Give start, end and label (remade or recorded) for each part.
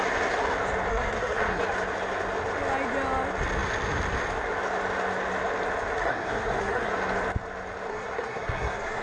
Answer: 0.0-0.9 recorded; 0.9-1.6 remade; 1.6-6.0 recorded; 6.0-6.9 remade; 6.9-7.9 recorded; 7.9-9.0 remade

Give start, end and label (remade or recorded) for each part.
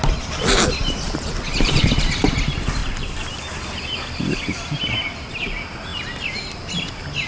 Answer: 0.0-0.8 recorded; 0.8-1.8 remade; 1.8-2.8 recorded; 2.8-3.4 remade; 3.4-7.3 recorded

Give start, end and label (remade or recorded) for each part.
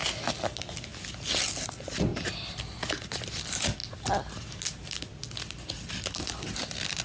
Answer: 0.0-7.0 recorded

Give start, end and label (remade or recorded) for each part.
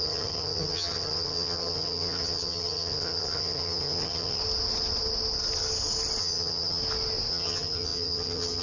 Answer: 0.0-4.4 remade; 4.4-6.2 recorded; 6.2-6.8 remade; 6.8-7.3 recorded; 7.3-8.6 remade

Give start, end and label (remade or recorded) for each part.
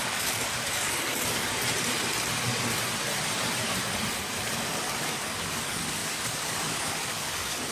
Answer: 0.0-1.5 remade; 1.5-4.1 recorded; 4.1-7.7 remade